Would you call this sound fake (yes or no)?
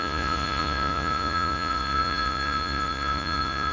yes